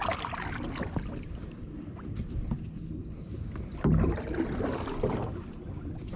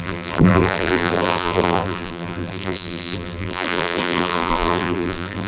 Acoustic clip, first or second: first